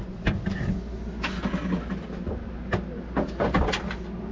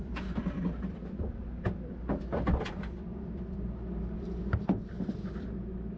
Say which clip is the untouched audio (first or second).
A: first